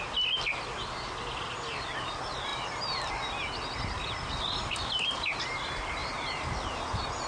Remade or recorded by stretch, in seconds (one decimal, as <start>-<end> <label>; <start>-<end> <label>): 0.0-6.0 recorded; 6.0-7.3 remade